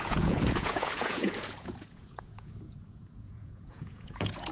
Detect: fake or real fake